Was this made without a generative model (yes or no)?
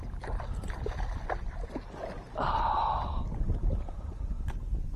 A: yes